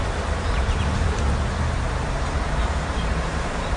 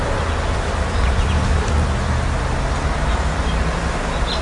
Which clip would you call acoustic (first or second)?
second